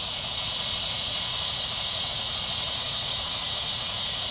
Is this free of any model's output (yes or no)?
no